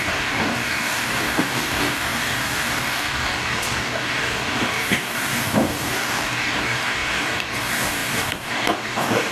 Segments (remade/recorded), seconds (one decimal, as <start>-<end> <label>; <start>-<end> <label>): 0.0-9.3 remade